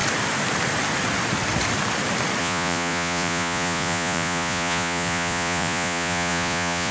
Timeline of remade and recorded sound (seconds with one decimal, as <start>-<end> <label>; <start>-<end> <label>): 0.0-2.4 recorded; 2.4-6.9 remade

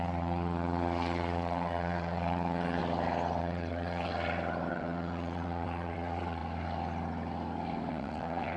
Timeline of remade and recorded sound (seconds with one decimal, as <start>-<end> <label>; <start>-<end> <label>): 0.0-2.8 remade; 2.8-3.4 recorded; 3.4-4.1 remade; 4.1-4.7 recorded; 4.7-6.4 remade; 6.4-7.9 recorded; 7.9-8.6 remade

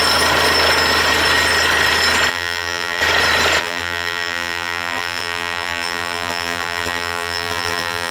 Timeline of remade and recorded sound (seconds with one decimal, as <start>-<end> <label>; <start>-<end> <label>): 0.0-2.3 recorded; 2.3-3.0 remade; 3.0-3.6 recorded; 3.6-8.1 remade

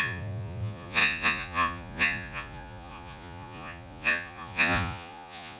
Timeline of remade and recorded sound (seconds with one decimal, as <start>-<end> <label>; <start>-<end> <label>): 0.0-5.6 remade

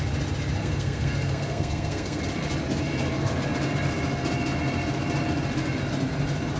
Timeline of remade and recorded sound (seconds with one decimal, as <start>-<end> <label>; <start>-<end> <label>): 0.0-0.6 recorded; 0.6-2.2 remade; 2.2-6.6 recorded

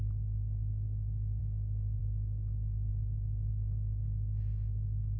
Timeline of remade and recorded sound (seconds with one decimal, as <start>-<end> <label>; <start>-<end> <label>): 0.0-2.9 remade; 2.9-3.5 recorded; 3.5-5.2 remade

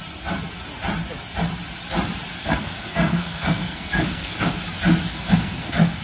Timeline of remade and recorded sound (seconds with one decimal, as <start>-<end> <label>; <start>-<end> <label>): 0.0-2.4 recorded; 2.4-4.6 remade; 4.6-5.1 recorded; 5.1-6.0 remade

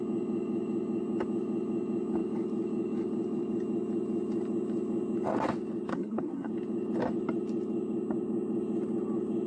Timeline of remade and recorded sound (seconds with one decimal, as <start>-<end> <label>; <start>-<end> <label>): 0.0-5.9 recorded; 5.9-6.5 remade; 6.5-9.5 recorded